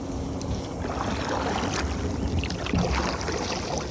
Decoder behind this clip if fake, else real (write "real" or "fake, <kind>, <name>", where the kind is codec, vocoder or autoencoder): real